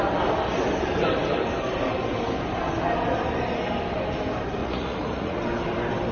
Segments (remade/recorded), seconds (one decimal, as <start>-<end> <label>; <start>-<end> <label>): 0.0-4.6 recorded; 4.6-5.4 remade; 5.4-6.1 recorded